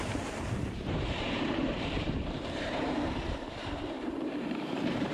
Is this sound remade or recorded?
remade